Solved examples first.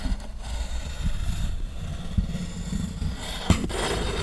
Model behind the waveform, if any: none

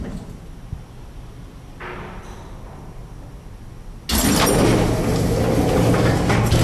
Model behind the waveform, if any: none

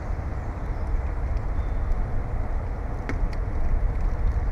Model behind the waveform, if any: none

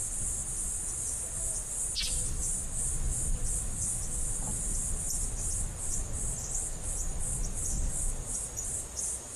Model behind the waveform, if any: none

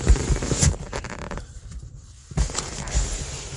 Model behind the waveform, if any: vocoder, BigVGAN v2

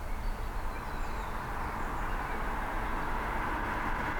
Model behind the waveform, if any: none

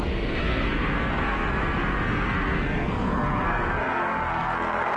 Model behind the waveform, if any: codec, SNAC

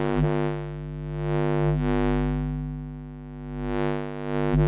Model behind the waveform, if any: none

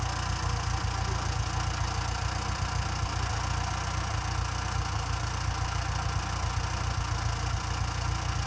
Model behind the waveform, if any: none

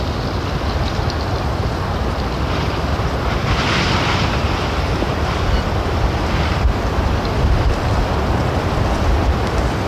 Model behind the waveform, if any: vocoder, BigVGAN v2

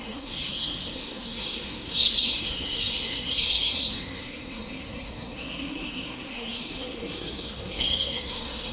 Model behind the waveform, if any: codec, SNAC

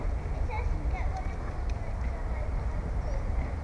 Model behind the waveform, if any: none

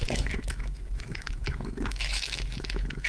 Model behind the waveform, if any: autoencoder, DAC-VAE